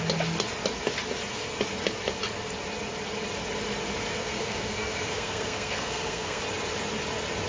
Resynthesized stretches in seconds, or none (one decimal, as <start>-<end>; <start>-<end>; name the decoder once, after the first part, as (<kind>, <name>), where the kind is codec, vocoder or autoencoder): 4.1-6.4 (codec, SNAC)